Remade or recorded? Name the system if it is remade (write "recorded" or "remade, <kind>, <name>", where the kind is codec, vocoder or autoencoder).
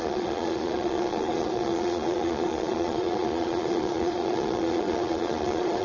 remade, vocoder, Vocos